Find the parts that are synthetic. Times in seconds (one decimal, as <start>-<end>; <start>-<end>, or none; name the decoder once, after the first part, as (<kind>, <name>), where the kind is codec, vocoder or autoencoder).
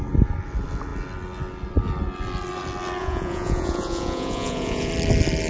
3.0-4.9 (vocoder, Vocos)